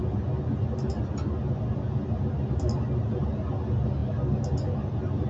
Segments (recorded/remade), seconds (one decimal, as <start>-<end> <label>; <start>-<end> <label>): 0.0-5.3 recorded